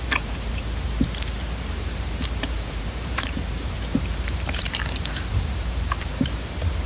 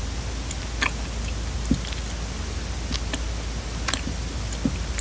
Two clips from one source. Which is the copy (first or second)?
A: first